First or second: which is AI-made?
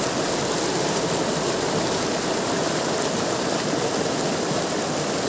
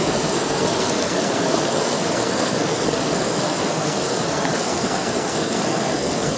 second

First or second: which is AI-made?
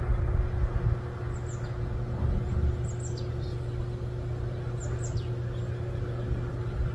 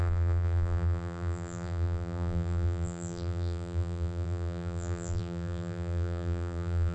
second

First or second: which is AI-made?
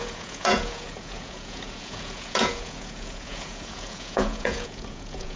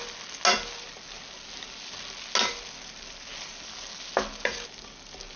first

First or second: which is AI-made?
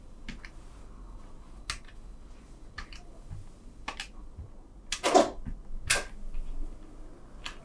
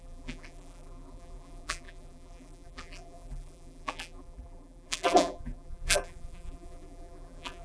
second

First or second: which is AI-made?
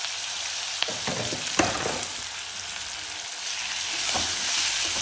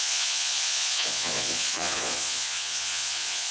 second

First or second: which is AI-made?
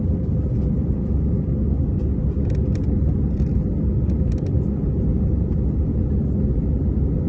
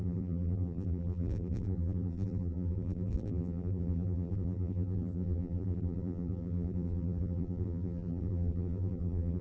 second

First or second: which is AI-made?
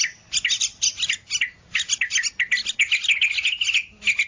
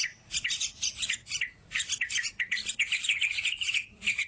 second